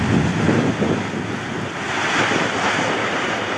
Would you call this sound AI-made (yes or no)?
no